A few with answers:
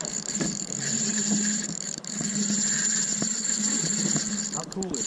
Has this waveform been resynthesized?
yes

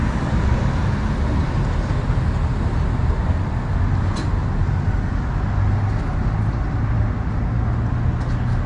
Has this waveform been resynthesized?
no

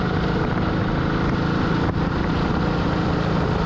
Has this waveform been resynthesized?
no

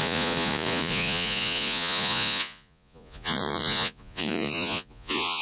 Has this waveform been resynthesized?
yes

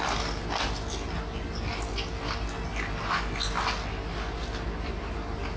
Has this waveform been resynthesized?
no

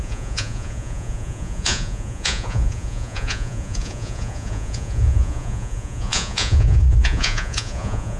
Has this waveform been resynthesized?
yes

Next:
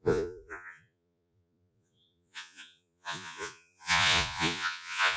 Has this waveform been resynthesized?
yes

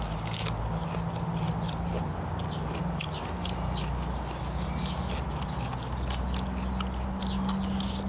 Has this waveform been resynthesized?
no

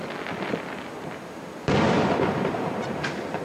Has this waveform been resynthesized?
no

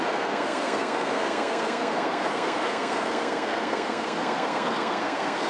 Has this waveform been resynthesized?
yes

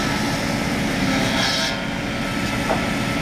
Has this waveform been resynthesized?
no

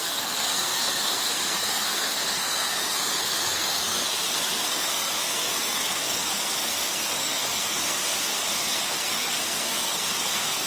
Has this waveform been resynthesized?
yes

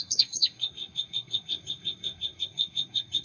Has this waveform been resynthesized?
yes